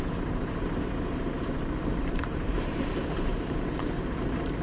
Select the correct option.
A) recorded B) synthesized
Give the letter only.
B